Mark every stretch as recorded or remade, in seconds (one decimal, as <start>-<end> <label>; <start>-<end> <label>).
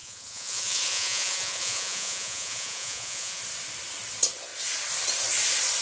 0.0-3.4 remade; 3.4-5.8 recorded